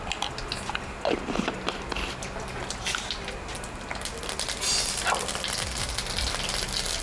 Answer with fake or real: real